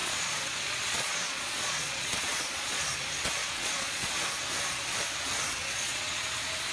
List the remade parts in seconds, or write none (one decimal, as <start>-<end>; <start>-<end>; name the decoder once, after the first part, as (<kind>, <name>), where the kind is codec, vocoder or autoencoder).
0.0-2.8 (vocoder, Vocos); 3.4-4.1; 5.6-6.7